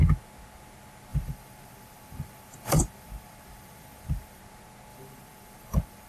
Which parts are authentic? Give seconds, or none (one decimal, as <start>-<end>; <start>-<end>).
0.0-1.1; 4.4-4.9